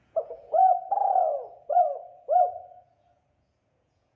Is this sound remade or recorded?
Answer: remade